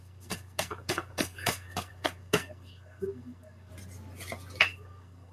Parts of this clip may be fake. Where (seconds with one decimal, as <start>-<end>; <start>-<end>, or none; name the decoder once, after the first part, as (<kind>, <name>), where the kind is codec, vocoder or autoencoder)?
0.0-3.7 (codec, SNAC); 4.6-5.3